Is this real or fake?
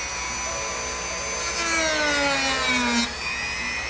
real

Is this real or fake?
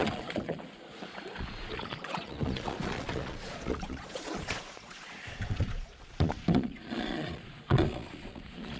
fake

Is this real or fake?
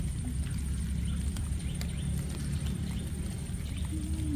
real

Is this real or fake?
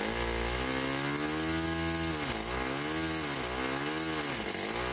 real